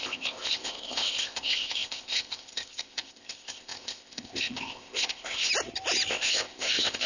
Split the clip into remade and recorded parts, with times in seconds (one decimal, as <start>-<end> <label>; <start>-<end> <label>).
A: 0.0-5.5 remade; 5.5-6.1 recorded; 6.1-7.1 remade

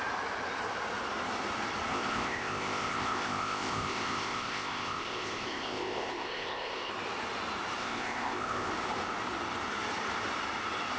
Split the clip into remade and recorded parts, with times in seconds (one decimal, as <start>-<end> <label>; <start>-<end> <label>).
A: 0.0-1.9 recorded; 1.9-6.9 remade; 6.9-7.8 recorded; 7.8-8.7 remade; 8.7-11.0 recorded

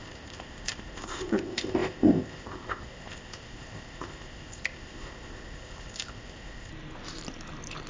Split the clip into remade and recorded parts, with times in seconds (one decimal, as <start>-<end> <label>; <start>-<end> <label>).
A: 0.0-6.7 remade; 6.7-7.9 recorded

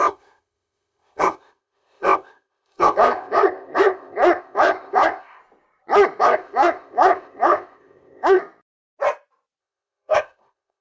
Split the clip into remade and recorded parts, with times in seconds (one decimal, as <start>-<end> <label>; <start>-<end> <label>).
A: 0.0-5.4 remade; 5.4-6.2 recorded; 6.2-8.4 remade; 8.4-9.6 recorded; 9.6-10.8 remade